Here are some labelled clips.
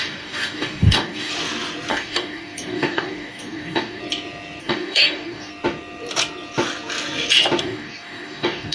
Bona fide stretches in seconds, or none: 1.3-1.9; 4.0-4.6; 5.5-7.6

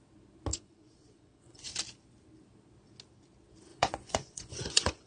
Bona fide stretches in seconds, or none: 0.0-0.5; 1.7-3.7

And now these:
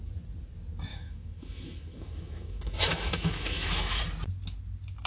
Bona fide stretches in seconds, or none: 0.0-0.9; 4.0-5.1

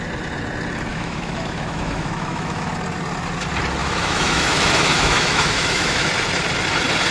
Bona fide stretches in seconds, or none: 0.0-0.9; 2.7-3.8; 6.1-7.1